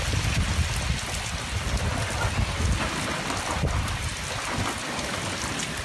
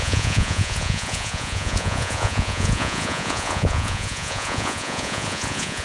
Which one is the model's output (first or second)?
second